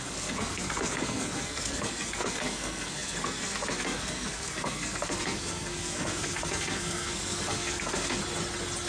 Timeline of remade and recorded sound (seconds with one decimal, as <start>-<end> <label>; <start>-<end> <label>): 0.0-8.2 remade; 8.2-8.9 recorded